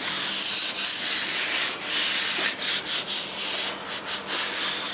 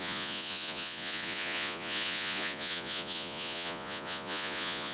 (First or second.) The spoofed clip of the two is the second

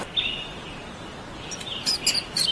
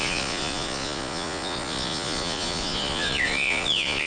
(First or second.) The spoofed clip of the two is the second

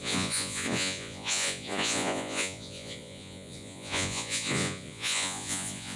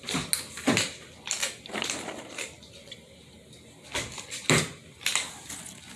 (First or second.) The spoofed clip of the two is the first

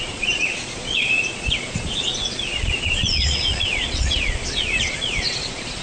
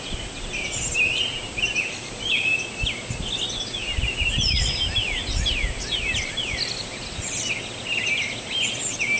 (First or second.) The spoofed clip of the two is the first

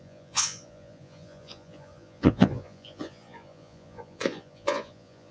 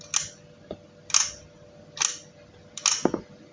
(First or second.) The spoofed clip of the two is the first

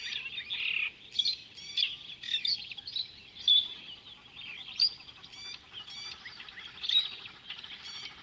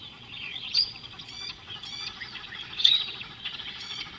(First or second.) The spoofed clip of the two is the second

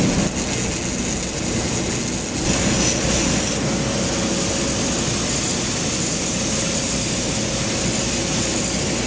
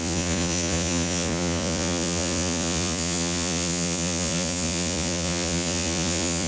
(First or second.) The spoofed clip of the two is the second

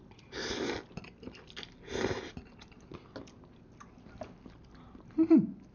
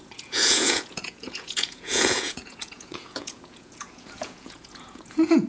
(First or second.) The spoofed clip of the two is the second